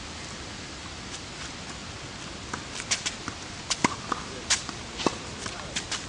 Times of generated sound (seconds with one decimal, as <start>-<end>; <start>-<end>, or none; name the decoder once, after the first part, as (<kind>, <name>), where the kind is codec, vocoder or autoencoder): 0.0-6.1 (vocoder, BigVGAN v2)